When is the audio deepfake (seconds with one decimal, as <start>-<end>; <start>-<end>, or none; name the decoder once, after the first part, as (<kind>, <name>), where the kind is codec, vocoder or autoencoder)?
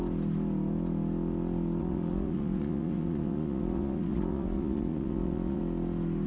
1.8-5.6 (vocoder, Vocos)